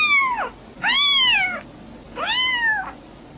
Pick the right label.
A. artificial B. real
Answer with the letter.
B